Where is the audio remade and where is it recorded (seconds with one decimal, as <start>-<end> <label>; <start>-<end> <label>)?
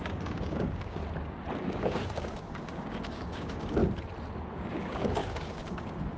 0.0-1.0 remade; 1.0-1.6 recorded; 1.6-3.8 remade; 3.8-4.5 recorded; 4.5-6.2 remade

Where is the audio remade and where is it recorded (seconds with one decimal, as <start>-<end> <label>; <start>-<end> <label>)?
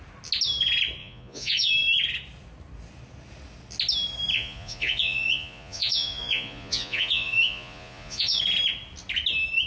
0.0-1.0 recorded; 1.0-1.7 remade; 1.7-4.3 recorded; 4.3-8.4 remade; 8.4-9.7 recorded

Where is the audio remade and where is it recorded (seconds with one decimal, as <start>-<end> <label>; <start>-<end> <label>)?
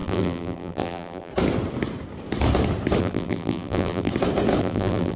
0.0-1.3 remade; 1.3-3.0 recorded; 3.0-4.1 remade; 4.1-4.6 recorded; 4.6-5.2 remade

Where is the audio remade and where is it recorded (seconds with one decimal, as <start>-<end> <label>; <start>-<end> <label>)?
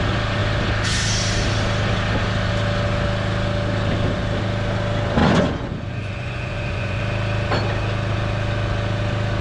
0.0-5.2 recorded; 5.2-7.0 remade; 7.0-9.4 recorded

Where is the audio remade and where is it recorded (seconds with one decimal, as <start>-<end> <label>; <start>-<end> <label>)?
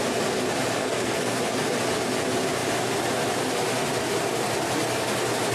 0.0-0.8 recorded; 0.8-1.4 remade; 1.4-5.5 recorded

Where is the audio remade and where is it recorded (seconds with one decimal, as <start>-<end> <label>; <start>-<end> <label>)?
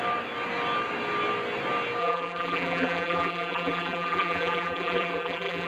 0.0-2.0 recorded; 2.0-5.7 remade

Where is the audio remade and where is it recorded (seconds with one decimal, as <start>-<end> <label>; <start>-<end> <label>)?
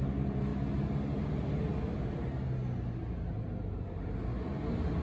0.0-5.0 recorded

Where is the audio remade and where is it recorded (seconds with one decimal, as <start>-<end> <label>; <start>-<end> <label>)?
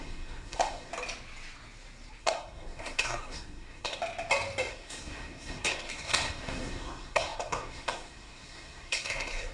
0.0-0.9 remade; 0.9-2.2 recorded; 2.2-4.0 remade; 4.0-4.7 recorded; 4.7-9.5 remade